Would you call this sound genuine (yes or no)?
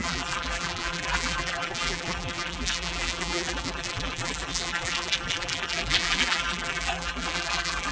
no